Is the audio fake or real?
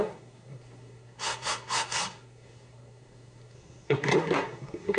fake